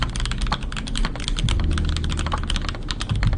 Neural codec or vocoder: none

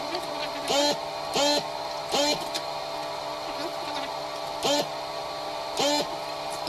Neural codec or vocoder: none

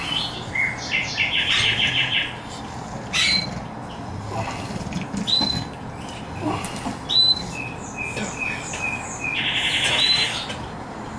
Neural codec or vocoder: none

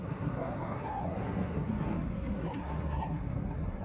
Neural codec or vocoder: codec, SNAC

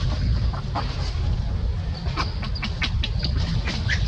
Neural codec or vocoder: none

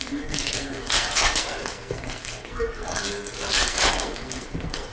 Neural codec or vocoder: codec, SNAC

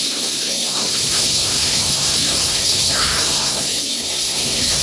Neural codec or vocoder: codec, SNAC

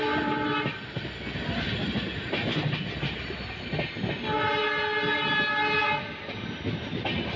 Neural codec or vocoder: none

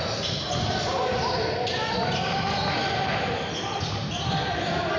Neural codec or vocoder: none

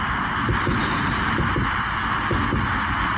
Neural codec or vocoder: none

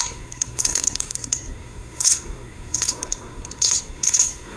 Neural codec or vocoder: codec, SNAC